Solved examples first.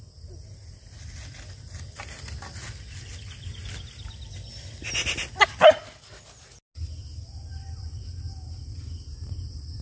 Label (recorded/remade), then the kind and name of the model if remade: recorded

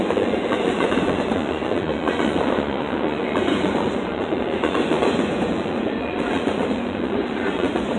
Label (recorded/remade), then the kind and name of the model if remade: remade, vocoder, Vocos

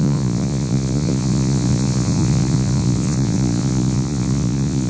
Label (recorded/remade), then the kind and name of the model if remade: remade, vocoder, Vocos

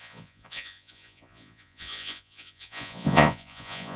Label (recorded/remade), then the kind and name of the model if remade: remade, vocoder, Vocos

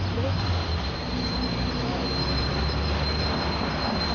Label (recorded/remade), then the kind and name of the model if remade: recorded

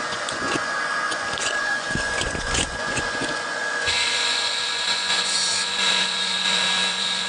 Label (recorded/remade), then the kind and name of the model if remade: remade, vocoder, Vocos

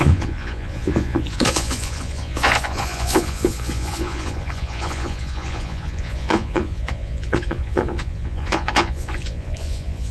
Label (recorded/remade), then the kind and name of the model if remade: remade, vocoder, Vocos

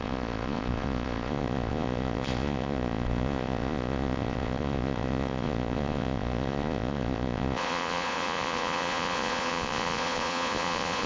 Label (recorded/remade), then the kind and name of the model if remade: remade, vocoder, Vocos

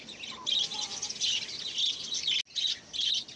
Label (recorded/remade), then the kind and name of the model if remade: recorded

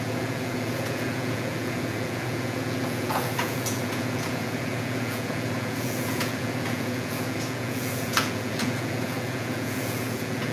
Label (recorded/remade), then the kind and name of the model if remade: remade, vocoder, Vocos